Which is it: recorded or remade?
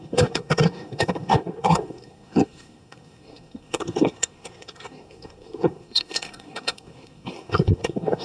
remade